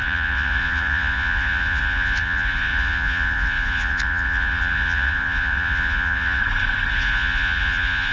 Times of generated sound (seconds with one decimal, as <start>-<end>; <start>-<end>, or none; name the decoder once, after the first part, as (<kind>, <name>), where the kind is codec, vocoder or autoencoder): 0.0-6.4 (vocoder, Vocos); 6.9-8.1